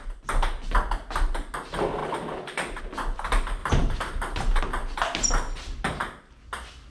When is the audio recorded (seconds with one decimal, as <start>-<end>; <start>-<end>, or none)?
0.0-3.6; 4.6-6.9